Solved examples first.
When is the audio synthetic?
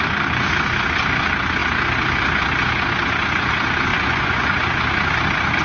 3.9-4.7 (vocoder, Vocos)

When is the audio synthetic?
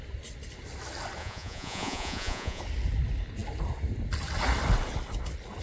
1.2-2.6 (vocoder, Vocos)